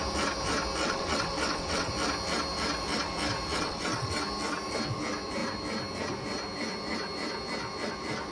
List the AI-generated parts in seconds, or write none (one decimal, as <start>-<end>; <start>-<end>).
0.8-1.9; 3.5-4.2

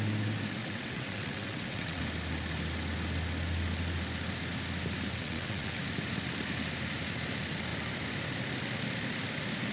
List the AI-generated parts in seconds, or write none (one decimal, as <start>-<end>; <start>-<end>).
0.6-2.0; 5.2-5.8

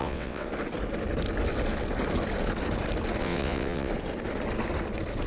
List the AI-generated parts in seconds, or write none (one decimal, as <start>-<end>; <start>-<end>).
0.0-0.5; 3.2-3.9

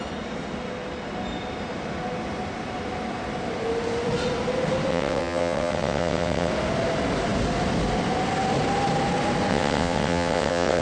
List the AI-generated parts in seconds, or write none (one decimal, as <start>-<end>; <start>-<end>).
4.9-6.5; 9.5-10.8

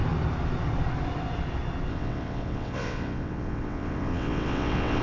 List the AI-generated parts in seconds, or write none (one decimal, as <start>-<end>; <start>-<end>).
1.9-5.0